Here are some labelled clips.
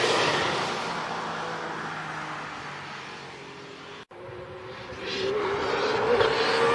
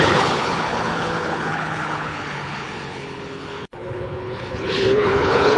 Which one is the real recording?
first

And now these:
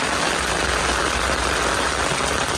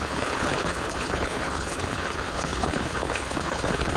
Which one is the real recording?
first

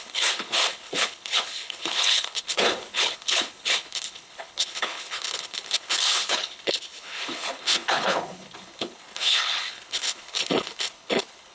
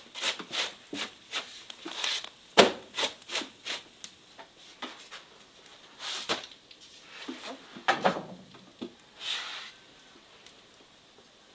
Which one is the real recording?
second